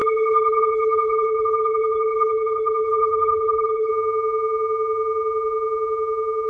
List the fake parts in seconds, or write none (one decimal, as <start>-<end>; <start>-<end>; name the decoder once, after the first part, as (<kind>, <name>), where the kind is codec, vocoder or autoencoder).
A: 0.0-3.9 (codec, HILCodec)